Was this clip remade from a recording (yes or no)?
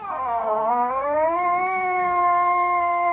yes